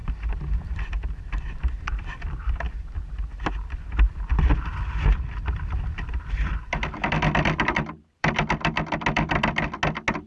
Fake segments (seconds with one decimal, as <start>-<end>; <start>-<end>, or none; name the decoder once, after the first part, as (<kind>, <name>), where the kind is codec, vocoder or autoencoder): 0.0-3.8 (vocoder, BigVGAN v2); 4.3-8.4